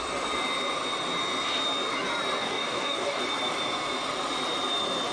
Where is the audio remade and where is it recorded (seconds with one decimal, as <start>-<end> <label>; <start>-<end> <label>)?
0.0-2.4 recorded; 2.4-3.2 remade; 3.2-5.1 recorded